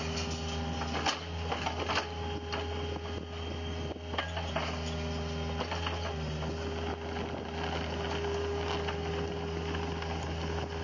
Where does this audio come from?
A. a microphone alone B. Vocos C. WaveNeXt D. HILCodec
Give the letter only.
A